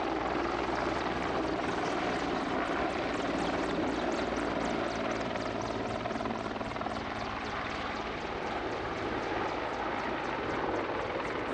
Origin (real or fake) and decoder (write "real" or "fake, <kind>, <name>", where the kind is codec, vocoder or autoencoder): fake, vocoder, BigVGAN v2